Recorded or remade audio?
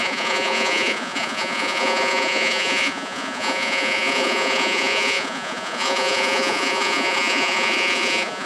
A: remade